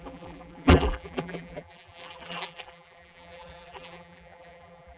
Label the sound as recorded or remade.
remade